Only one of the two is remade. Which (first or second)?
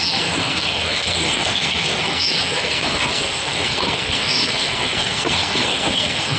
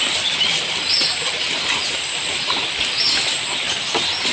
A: first